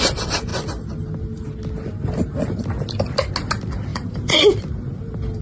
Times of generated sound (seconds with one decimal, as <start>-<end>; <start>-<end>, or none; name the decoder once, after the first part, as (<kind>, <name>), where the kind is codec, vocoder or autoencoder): 3.9-4.6 (vocoder, BigVGAN v2)